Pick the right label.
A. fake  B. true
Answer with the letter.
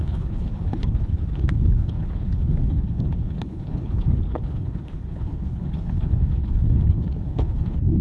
A